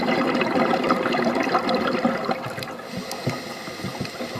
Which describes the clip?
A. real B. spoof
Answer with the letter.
A